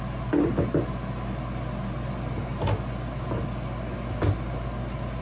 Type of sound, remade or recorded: recorded